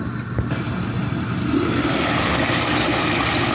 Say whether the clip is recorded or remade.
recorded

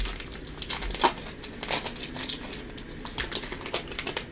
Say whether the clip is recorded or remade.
recorded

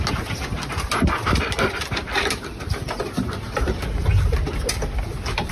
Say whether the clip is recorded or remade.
recorded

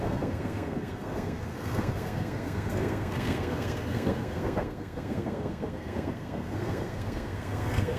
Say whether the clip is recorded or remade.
remade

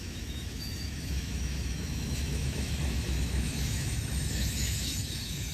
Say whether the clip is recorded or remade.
remade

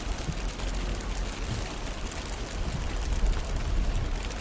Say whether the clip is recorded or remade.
recorded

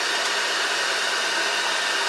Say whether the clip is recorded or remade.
recorded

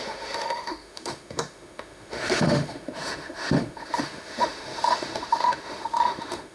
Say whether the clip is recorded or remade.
remade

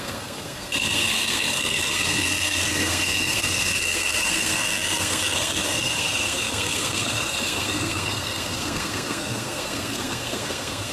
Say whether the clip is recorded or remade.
remade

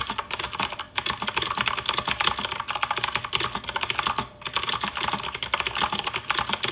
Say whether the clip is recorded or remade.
recorded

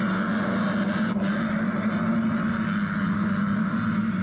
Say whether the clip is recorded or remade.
recorded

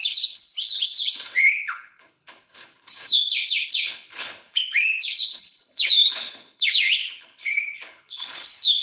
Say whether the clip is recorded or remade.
remade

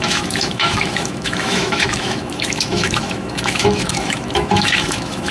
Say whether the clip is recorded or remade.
remade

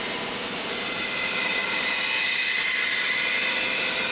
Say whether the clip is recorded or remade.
recorded